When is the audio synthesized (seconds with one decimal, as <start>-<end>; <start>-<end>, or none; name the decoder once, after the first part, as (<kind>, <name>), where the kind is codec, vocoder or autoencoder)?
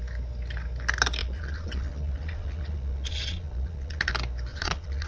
1.2-4.1 (vocoder, Vocos); 4.5-5.1